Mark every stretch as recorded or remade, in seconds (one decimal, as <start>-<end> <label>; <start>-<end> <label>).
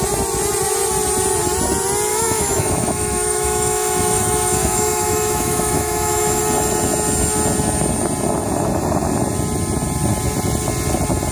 0.0-2.1 recorded; 2.1-6.4 remade; 6.4-11.3 recorded